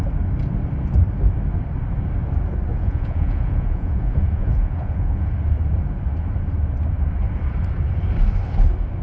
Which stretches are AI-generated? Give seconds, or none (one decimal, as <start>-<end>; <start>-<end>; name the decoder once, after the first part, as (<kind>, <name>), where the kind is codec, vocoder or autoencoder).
2.7-5.3 (vocoder, Vocos)